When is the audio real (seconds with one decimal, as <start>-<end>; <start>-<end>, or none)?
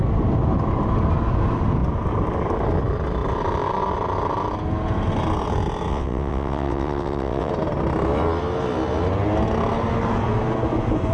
0.0-5.9; 7.5-11.1